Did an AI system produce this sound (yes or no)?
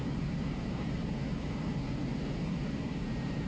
no